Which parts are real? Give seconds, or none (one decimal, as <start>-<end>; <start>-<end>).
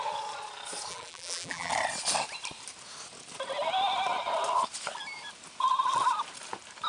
0.0-0.9; 1.7-6.9